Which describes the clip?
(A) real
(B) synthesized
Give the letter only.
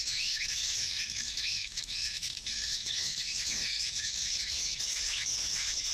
B